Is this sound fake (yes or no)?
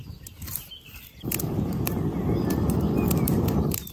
no